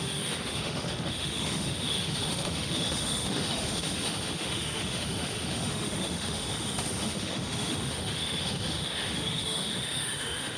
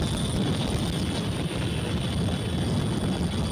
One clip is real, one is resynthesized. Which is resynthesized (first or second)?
first